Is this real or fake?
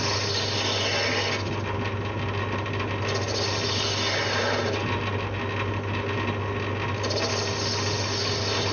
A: real